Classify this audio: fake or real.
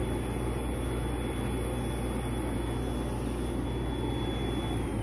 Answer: real